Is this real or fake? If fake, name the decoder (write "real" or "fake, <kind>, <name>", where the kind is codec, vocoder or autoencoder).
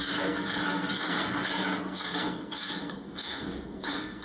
fake, codec, SNAC